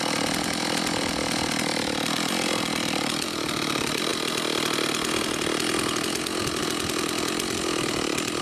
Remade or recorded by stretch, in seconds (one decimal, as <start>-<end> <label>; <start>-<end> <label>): 0.0-4.1 remade; 4.1-6.6 recorded; 6.6-8.4 remade